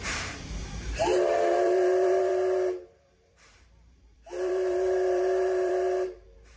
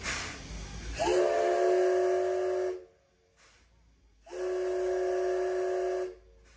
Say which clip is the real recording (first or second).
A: second